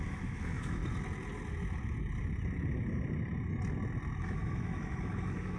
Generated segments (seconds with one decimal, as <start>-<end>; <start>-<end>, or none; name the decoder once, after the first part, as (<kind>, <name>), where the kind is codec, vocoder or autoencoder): 0.0-0.8 (autoencoder, DAC-VAE); 4.2-5.6